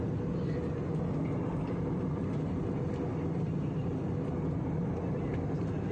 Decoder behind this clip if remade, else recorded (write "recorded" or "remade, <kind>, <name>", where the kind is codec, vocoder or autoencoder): recorded